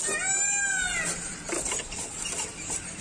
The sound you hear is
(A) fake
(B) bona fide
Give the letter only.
B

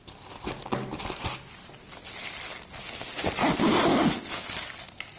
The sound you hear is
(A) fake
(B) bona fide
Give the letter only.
B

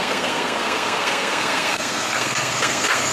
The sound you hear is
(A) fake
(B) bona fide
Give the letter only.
A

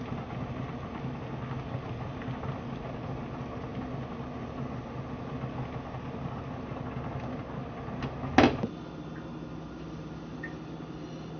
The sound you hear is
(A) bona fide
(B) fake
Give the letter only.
A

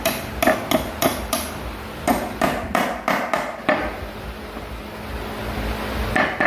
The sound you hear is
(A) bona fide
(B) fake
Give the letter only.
A